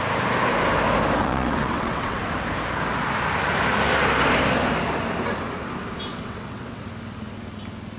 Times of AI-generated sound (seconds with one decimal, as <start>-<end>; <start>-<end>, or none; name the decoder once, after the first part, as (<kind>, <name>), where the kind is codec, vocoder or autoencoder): 1.2-2.2 (vocoder, WaveNeXt); 6.1-6.8